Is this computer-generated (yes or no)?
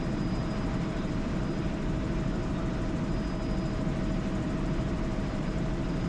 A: yes